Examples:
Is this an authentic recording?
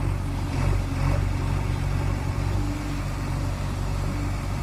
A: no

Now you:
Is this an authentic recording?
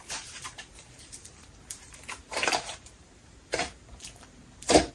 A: no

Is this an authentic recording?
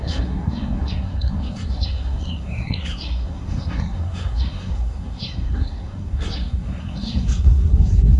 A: no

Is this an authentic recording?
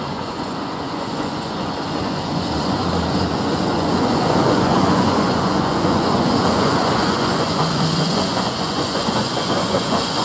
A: no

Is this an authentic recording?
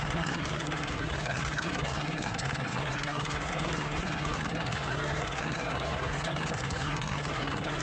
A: no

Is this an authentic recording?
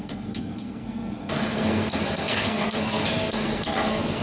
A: no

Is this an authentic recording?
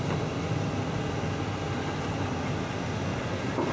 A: yes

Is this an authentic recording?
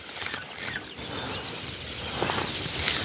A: yes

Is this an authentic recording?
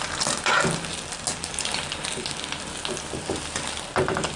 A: yes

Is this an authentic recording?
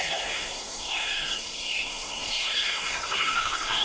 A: no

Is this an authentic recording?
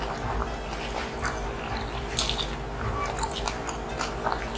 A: yes